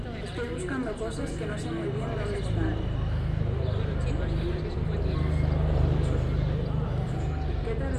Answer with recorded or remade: recorded